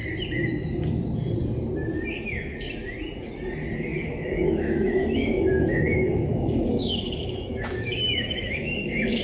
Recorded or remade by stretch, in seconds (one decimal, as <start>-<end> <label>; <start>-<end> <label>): 0.0-3.9 recorded; 3.9-9.2 remade